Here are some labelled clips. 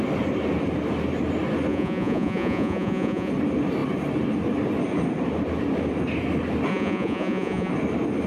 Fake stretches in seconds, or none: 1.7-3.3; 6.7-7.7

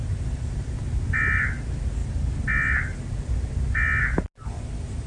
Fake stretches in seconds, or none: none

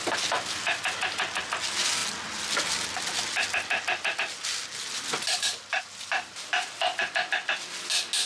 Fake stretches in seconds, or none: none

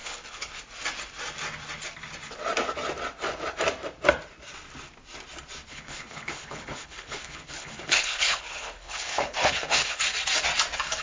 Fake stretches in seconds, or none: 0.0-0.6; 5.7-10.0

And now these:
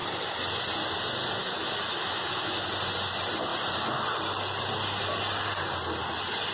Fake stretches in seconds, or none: 1.4-2.7

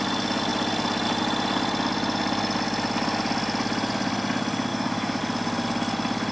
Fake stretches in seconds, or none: 4.7-5.2